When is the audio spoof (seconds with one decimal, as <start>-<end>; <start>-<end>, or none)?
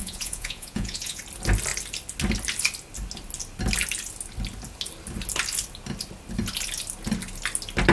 0.0-1.2